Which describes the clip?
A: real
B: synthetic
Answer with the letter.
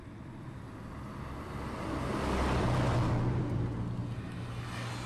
A